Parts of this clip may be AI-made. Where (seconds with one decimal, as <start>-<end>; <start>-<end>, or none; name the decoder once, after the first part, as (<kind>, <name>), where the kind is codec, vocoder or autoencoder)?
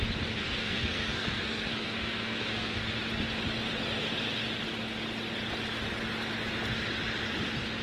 0.4-3.0 (codec, SNAC)